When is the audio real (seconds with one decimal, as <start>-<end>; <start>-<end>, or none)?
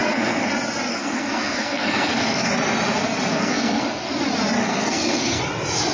0.5-0.9; 2.5-3.3; 4.1-4.6; 5.4-5.9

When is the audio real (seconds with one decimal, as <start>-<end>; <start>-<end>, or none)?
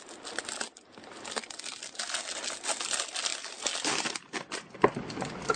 0.0-5.6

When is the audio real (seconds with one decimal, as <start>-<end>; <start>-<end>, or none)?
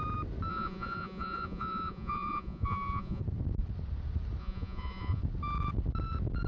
0.0-0.5; 3.2-4.4; 5.2-6.5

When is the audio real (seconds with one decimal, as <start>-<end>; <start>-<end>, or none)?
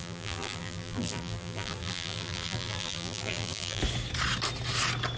3.8-5.2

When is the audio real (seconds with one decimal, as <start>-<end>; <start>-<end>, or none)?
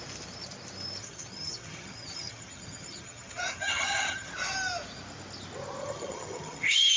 0.0-1.0; 4.3-5.8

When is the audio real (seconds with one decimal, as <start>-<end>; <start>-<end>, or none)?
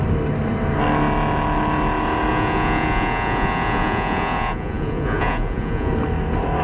0.0-2.3; 5.9-6.6